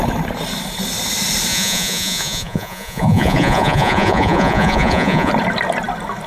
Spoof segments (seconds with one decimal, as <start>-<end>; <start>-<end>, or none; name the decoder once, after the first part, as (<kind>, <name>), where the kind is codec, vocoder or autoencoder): 1.5-5.3 (vocoder, Vocos)